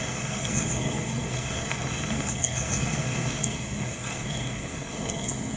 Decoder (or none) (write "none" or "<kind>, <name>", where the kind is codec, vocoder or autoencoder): codec, SNAC